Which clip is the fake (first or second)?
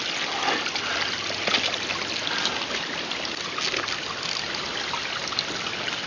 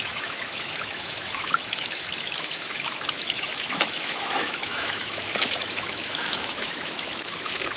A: second